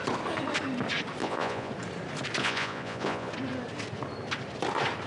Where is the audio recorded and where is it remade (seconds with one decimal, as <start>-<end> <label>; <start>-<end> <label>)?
0.0-1.2 recorded; 1.2-1.7 remade; 1.7-2.4 recorded; 2.4-3.3 remade; 3.3-5.1 recorded